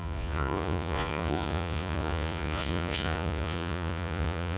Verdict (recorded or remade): remade